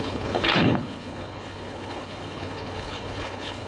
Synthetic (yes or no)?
yes